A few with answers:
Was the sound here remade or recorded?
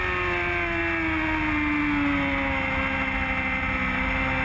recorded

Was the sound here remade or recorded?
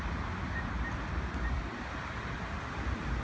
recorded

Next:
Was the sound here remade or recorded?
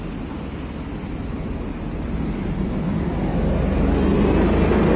recorded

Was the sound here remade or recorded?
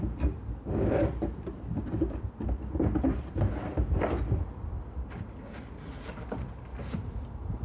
recorded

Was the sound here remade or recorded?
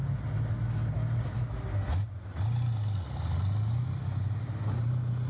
recorded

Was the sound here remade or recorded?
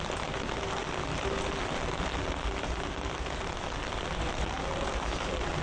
recorded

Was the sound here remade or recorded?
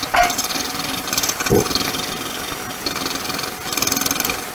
recorded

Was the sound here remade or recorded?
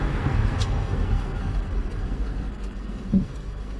remade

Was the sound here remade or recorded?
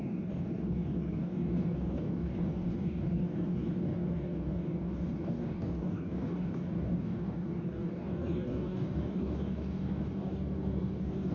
remade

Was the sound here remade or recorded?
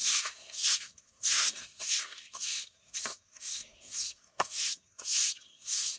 remade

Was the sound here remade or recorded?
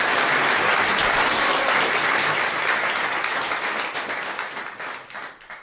recorded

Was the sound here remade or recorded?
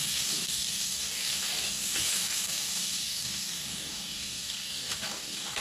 remade